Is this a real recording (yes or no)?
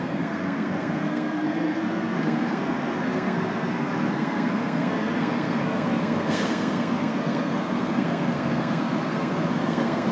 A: no